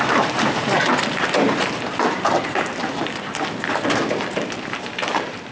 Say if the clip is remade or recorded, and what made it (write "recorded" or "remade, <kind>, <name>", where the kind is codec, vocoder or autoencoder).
remade, vocoder, BigVGAN v2